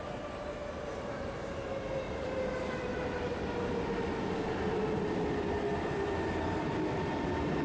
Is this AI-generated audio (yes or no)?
no